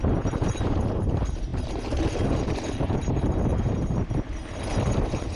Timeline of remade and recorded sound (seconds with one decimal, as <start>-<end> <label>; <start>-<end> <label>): 0.0-5.4 remade